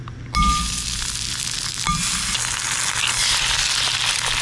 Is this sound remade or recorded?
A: recorded